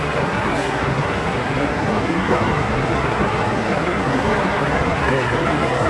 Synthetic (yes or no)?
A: yes